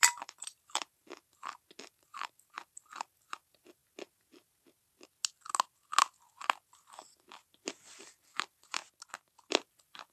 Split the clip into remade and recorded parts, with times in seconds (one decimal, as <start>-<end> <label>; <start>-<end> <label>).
0.0-1.0 remade; 1.0-1.8 recorded; 1.8-3.8 remade; 3.8-7.7 recorded; 7.7-8.8 remade; 8.8-9.5 recorded; 9.5-10.1 remade